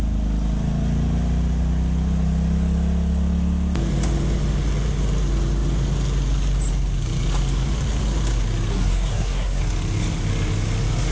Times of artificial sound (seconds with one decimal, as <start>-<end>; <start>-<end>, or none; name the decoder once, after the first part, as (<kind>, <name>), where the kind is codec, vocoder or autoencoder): 8.7-9.6 (codec, SNAC)